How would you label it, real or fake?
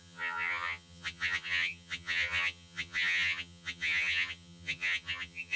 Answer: fake